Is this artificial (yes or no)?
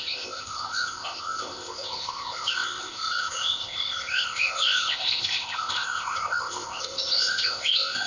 yes